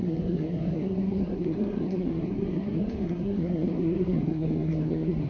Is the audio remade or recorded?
remade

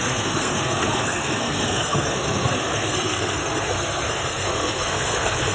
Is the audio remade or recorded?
remade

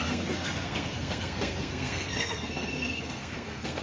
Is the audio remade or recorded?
remade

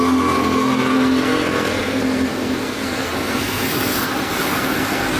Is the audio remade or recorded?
remade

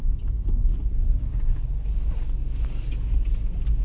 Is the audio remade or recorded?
recorded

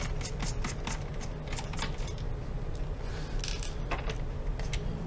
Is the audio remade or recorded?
recorded